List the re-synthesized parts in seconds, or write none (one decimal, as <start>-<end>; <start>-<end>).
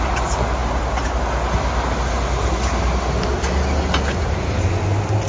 none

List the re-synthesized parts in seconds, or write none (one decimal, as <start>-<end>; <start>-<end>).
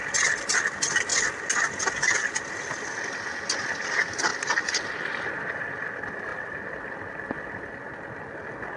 none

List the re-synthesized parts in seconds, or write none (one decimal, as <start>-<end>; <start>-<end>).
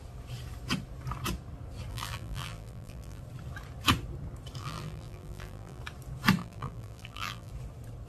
1.9-3.2; 4.6-5.8; 6.4-7.5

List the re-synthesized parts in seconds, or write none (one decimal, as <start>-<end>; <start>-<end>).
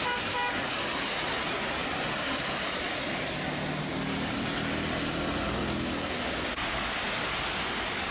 none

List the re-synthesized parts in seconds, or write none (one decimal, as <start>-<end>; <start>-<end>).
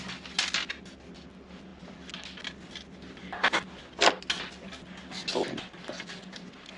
none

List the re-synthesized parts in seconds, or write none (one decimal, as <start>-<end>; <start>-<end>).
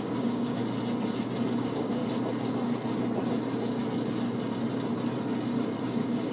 0.0-0.6; 1.6-2.0; 5.8-6.3